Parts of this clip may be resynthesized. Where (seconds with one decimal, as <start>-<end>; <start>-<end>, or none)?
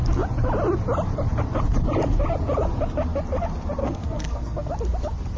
3.8-4.7